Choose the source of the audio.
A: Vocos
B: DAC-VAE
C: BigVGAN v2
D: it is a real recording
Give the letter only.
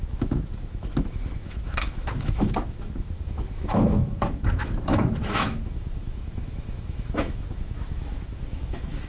B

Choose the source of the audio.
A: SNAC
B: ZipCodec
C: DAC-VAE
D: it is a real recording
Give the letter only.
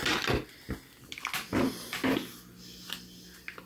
D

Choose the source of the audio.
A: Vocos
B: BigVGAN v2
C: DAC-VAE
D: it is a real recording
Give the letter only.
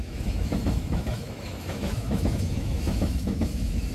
C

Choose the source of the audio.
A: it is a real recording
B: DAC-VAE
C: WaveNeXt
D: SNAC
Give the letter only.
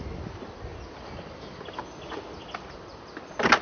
A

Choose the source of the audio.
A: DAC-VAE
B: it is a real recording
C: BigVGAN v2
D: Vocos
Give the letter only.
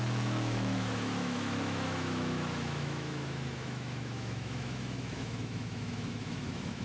A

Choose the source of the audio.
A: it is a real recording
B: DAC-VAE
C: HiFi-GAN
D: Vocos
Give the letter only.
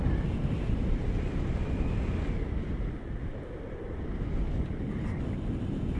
A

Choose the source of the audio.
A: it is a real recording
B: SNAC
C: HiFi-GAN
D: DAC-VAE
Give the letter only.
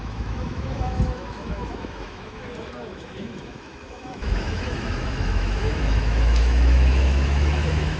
D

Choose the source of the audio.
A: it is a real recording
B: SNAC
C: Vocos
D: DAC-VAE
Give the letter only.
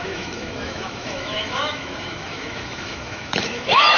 D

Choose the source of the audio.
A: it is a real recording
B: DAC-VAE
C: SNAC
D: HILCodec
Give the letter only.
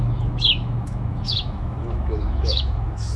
B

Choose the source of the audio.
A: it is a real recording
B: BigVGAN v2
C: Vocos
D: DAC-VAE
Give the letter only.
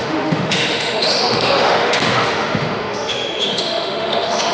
D